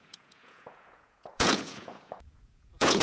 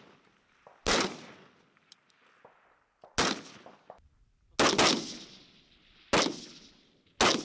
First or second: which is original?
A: second